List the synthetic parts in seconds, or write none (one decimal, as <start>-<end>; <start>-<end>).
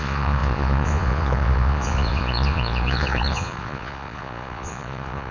0.0-5.3